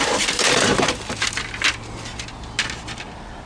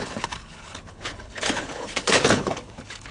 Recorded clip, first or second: first